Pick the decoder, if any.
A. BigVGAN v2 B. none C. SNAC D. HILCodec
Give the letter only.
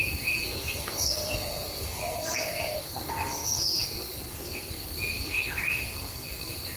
C